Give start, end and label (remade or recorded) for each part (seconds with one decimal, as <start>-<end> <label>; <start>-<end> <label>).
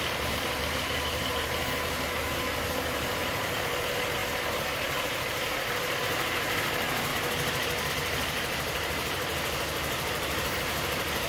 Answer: 0.0-4.2 remade; 4.2-6.0 recorded; 6.0-7.1 remade; 7.1-7.9 recorded; 7.9-11.3 remade